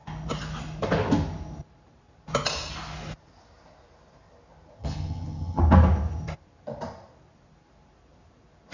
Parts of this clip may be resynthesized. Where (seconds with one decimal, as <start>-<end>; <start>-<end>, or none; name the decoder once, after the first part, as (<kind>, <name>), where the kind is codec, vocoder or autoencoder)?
4.8-5.6 (vocoder, HiFi-GAN)